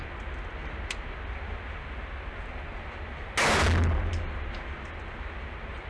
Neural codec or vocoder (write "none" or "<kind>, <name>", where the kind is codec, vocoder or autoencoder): none